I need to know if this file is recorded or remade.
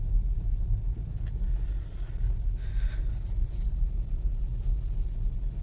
recorded